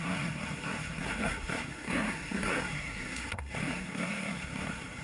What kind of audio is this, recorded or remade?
remade